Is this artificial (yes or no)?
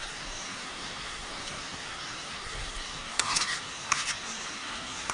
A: yes